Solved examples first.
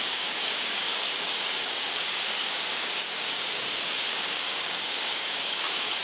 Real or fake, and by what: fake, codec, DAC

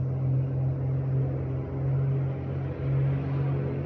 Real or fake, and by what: real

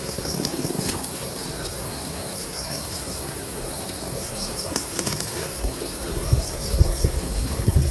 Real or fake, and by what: fake, codec, SNAC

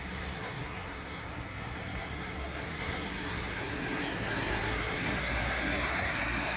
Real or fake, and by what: fake, codec, SNAC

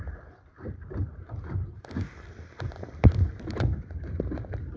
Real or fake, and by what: fake, vocoder, BigVGAN v2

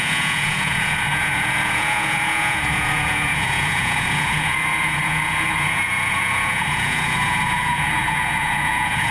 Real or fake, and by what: fake, vocoder, Vocos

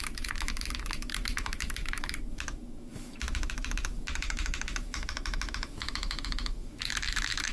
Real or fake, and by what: fake, autoencoder, DAC-VAE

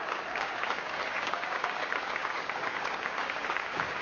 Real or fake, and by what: fake, codec, DAC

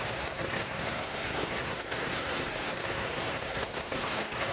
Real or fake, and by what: fake, codec, SNAC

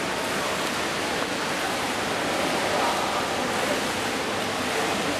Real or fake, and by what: real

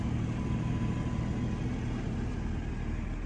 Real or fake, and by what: real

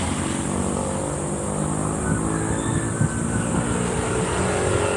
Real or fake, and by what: real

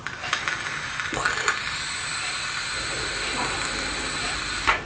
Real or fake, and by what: real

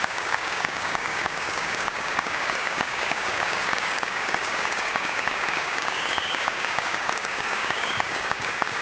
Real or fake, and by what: fake, codec, DAC